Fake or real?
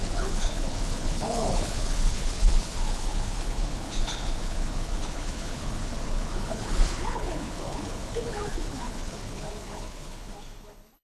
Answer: fake